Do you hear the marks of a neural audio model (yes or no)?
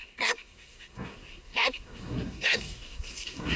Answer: yes